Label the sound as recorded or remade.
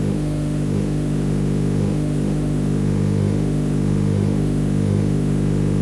remade